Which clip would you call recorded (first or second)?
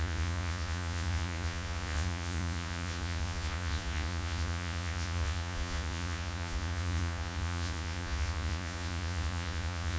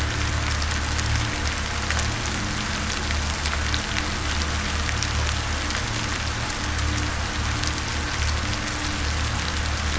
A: second